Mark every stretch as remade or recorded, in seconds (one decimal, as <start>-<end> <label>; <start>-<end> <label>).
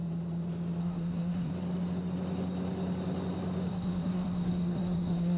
0.0-0.8 recorded; 0.8-1.5 remade; 1.5-3.7 recorded; 3.7-5.4 remade